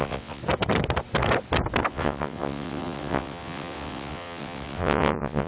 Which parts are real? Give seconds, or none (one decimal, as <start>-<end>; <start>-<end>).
0.4-1.9